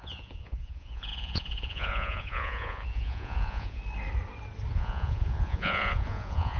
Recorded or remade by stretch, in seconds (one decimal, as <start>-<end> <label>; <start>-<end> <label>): 0.0-3.8 remade; 3.8-4.7 recorded; 4.7-6.6 remade